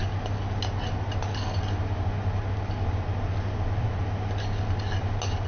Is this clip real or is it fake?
real